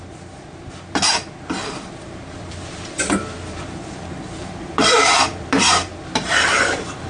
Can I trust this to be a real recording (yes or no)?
no